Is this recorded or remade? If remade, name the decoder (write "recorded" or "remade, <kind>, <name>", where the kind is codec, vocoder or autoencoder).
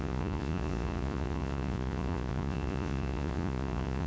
remade, vocoder, Vocos